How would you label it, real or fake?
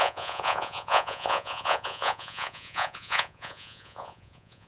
fake